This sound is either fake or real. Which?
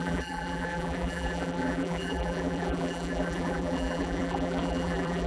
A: fake